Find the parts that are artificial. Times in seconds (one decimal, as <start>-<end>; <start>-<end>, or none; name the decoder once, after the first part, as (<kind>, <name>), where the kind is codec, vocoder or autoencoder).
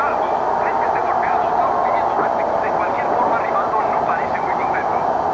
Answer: none